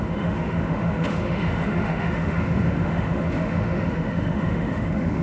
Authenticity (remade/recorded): remade